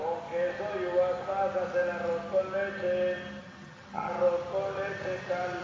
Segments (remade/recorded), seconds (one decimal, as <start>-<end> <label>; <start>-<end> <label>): 0.0-3.4 recorded; 3.4-4.1 remade; 4.1-5.6 recorded